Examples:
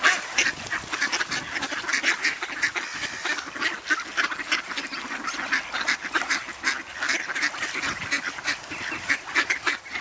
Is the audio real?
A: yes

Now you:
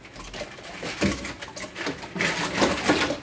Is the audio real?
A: yes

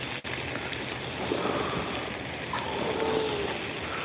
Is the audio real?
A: yes